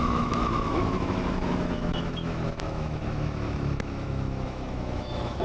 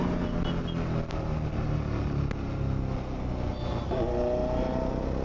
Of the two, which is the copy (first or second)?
first